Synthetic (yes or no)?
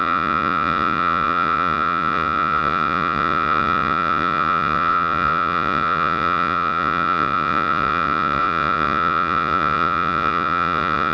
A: yes